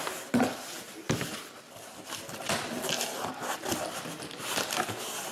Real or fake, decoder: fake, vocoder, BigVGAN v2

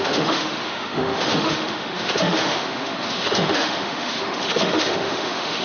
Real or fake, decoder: fake, autoencoder, DAC-VAE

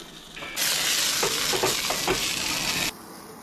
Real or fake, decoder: real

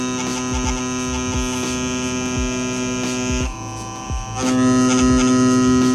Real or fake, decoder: real